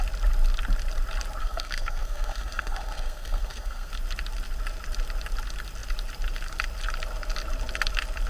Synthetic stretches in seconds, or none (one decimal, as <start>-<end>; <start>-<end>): 1.4-3.9

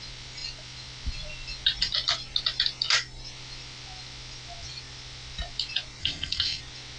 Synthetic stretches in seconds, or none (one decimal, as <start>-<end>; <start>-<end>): 6.0-6.6

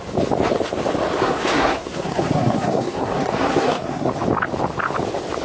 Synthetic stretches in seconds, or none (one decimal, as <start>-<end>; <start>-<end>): 1.2-4.1

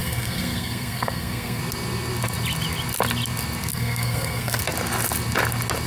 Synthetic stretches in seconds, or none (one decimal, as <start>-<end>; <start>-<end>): 0.0-1.6; 3.7-4.6

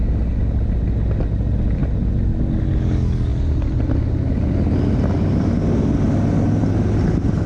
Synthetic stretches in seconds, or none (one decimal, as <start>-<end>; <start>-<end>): none

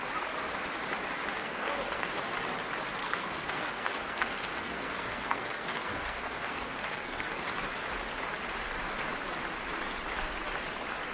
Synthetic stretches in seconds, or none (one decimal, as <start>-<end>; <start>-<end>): 1.4-2.1; 3.0-7.4

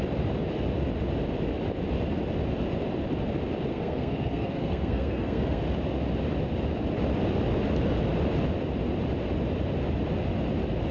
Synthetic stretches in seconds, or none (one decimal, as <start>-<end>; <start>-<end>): 3.7-5.6